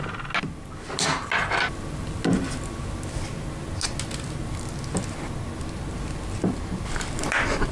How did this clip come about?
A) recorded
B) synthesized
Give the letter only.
A